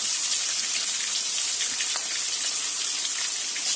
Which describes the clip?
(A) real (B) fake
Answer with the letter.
A